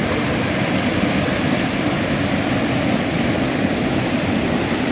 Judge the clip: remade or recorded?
recorded